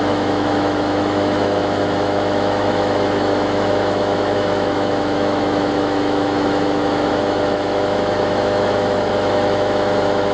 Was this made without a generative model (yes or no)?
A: no